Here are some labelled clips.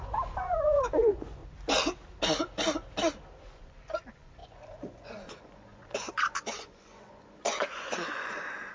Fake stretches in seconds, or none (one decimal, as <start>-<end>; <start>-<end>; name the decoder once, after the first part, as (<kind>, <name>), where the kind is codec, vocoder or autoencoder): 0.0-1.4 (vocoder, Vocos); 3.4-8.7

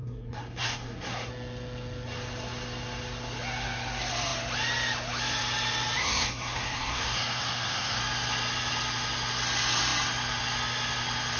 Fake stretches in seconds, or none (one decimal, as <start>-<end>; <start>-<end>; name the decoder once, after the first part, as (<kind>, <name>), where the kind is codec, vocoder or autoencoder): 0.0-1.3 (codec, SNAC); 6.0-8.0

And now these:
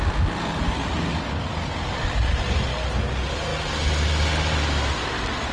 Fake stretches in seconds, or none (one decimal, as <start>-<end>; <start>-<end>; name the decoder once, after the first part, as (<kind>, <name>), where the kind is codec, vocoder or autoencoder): none

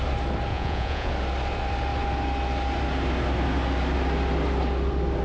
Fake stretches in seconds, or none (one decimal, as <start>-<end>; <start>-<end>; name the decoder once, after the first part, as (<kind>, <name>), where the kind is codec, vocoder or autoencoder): 0.5-1.1 (vocoder, Vocos)